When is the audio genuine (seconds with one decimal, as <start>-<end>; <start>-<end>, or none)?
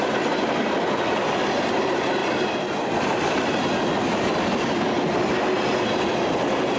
0.0-6.8